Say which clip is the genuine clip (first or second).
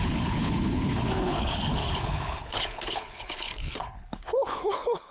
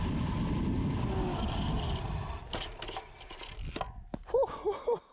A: second